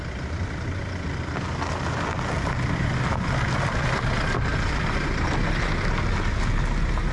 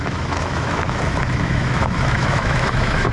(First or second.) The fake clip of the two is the second